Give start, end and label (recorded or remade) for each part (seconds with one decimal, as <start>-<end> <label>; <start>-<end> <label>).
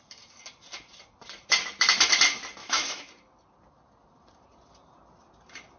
0.0-2.6 recorded; 2.6-3.1 remade; 3.1-5.8 recorded